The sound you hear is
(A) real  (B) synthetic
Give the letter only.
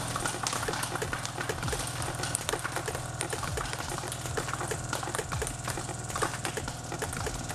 A